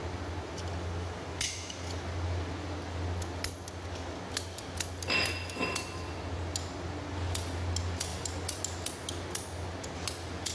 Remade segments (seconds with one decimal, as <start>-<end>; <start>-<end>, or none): none